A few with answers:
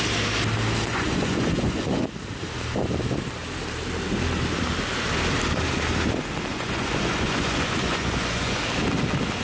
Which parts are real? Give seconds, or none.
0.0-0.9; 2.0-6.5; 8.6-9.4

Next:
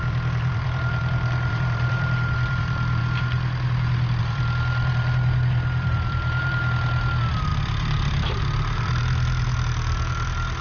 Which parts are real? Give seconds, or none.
3.0-4.2

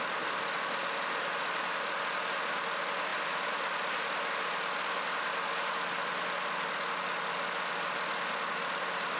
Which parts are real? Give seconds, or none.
0.0-9.2